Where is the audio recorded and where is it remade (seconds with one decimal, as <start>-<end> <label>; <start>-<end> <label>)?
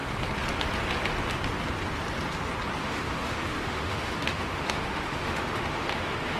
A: 0.0-2.8 recorded; 2.8-6.4 remade